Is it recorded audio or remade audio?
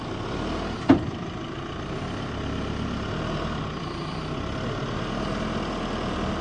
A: recorded